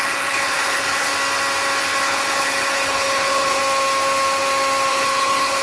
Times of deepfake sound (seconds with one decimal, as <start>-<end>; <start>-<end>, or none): 0.0-1.1; 1.8-3.6; 4.9-5.6